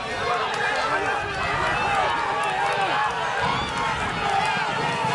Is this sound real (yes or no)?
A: yes